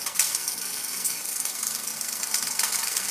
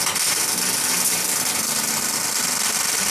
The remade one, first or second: first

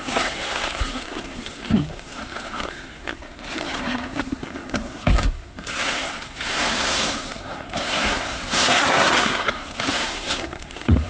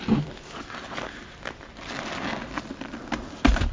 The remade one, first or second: first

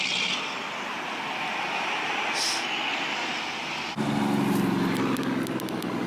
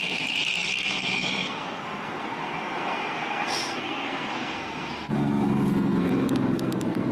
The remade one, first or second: second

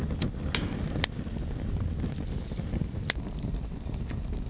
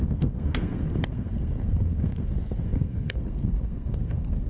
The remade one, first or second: second